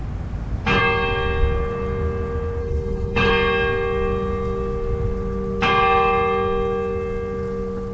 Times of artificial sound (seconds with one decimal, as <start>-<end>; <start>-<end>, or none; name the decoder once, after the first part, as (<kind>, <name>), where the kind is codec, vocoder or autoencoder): 2.6-3.3 (codec, HILCodec)